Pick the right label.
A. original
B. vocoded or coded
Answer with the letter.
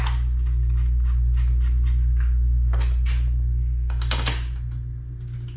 A